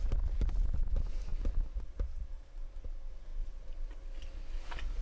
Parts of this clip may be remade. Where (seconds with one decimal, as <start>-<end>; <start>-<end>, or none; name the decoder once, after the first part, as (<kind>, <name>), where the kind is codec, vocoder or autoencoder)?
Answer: none